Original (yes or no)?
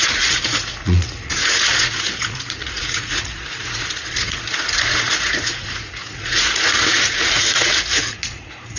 no